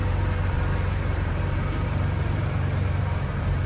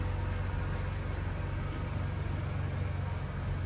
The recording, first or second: second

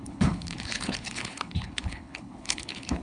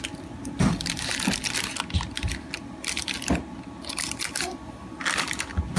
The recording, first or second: second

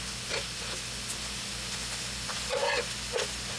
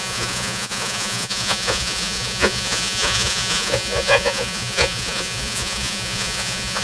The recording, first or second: first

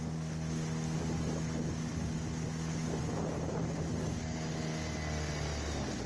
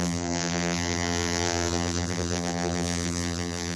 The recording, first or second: first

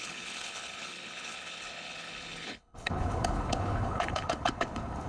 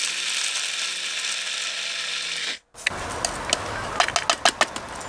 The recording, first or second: second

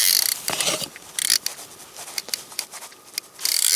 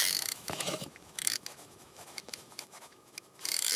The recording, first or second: first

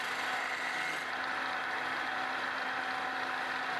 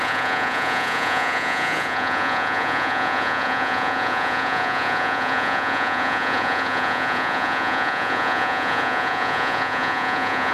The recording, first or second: first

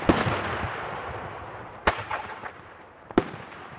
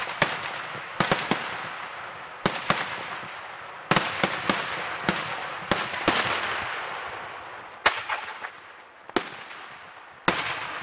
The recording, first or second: second